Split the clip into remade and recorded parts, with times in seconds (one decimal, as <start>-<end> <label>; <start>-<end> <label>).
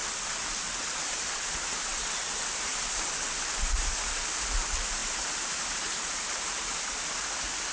0.0-7.7 recorded